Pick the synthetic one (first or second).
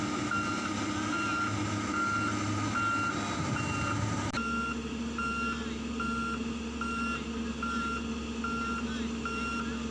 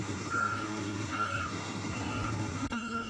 second